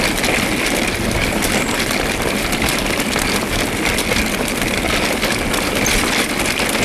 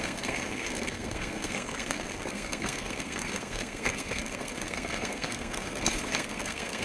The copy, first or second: second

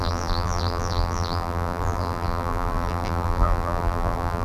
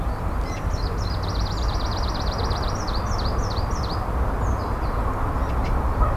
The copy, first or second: first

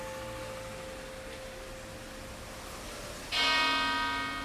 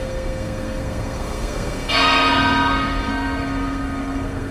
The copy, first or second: second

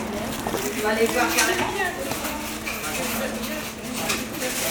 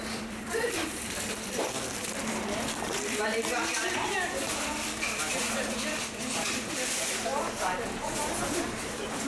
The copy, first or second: second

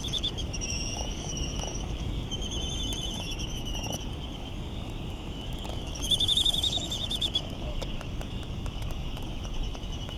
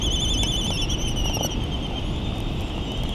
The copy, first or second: first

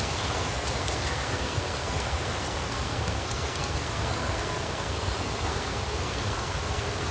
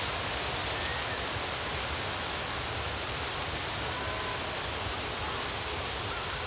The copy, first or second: first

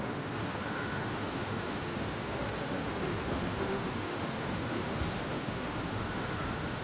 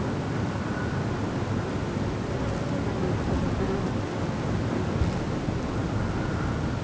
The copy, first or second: first